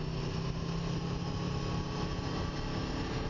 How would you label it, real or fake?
real